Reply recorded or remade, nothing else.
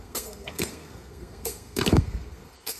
remade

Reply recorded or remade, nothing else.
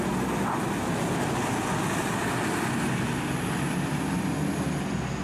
recorded